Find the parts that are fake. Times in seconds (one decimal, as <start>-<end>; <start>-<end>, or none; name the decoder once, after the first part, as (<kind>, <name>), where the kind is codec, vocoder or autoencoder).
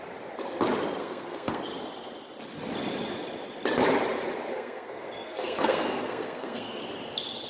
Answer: 1.0-1.6 (codec, SNAC); 4.5-6.8